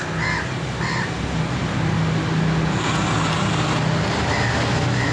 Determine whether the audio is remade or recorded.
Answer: recorded